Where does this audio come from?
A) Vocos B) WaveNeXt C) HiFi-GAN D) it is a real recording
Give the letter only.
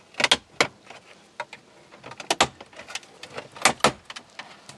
D